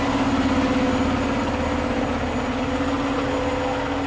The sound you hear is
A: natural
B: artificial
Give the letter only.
A